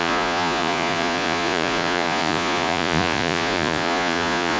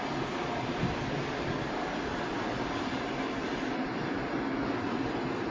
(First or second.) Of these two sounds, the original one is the second